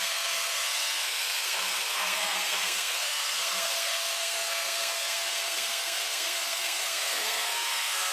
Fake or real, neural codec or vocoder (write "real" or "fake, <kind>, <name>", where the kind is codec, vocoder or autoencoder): fake, codec, SNAC